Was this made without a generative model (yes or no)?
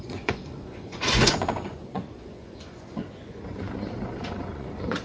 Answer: no